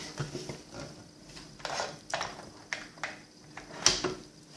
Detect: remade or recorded recorded